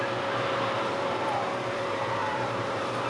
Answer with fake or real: fake